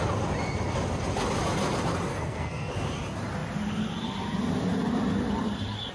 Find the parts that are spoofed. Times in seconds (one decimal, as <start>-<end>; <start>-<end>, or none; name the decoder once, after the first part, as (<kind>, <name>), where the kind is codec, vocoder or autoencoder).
2.1-2.7 (codec, SNAC)